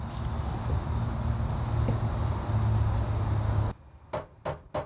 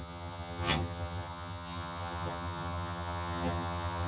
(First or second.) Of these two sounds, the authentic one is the first